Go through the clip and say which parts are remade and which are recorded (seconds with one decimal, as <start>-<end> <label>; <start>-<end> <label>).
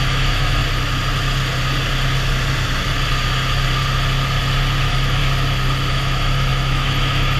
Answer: 0.0-0.6 remade; 0.6-4.8 recorded; 4.8-5.2 remade; 5.2-5.9 recorded; 5.9-7.4 remade